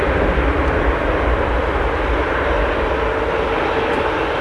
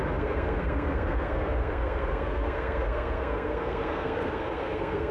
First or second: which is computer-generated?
second